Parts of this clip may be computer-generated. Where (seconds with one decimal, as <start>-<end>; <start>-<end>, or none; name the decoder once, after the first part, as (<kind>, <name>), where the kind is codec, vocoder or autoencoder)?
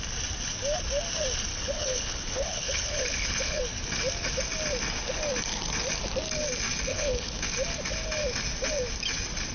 1.5-3.6 (codec, HILCodec); 6.9-7.4